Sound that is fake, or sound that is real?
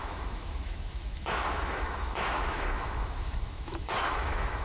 fake